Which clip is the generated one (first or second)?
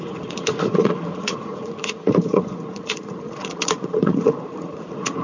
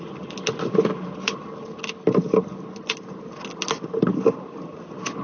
first